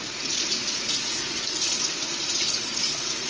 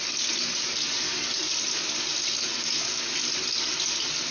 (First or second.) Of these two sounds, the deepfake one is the first